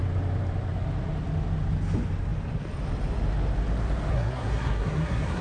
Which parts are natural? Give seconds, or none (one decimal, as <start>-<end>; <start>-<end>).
0.0-4.1